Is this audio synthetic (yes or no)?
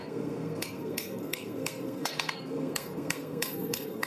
yes